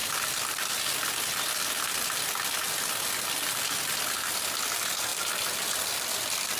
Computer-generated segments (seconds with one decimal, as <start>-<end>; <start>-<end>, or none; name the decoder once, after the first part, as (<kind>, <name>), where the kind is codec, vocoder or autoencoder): 5.1-5.9 (vocoder, BigVGAN v2)